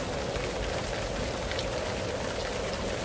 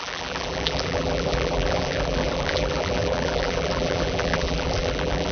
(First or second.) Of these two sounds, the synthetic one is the second